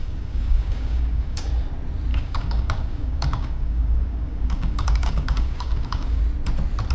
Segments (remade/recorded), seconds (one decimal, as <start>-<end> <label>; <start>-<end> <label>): 0.0-1.5 remade; 1.5-2.1 recorded; 2.1-6.2 remade; 6.2-6.9 recorded

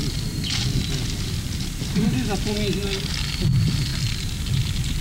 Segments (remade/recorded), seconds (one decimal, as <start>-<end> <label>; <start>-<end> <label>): 0.0-5.0 recorded

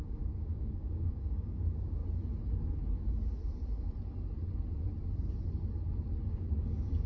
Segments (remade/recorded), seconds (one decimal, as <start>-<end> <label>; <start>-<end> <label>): 0.0-2.0 remade; 2.0-6.3 recorded; 6.3-7.1 remade

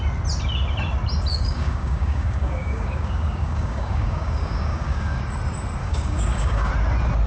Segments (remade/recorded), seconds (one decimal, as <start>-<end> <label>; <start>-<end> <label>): 0.0-1.3 recorded; 1.3-5.2 remade; 5.2-5.8 recorded; 5.8-6.7 remade; 6.7-7.3 recorded

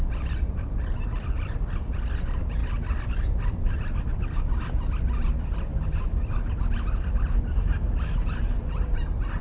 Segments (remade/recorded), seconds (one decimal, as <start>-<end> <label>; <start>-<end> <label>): 0.0-9.4 recorded

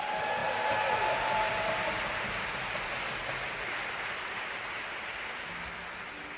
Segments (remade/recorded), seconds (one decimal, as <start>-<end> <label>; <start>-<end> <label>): 0.0-6.4 recorded